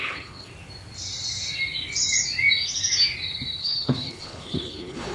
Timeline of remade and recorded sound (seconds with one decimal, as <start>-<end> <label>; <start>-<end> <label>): 0.0-0.5 remade; 0.5-3.6 recorded; 3.6-5.1 remade